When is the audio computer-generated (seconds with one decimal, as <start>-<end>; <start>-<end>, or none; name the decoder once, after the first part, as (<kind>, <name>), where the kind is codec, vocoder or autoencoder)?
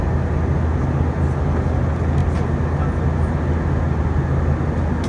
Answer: none